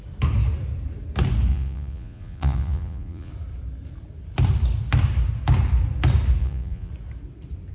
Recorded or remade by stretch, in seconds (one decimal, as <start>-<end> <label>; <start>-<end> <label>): 0.0-1.5 recorded; 1.5-3.3 remade; 3.3-6.4 recorded; 6.4-6.9 remade; 6.9-7.7 recorded